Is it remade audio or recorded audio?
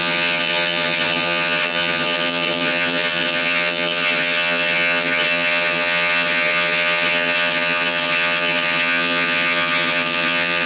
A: remade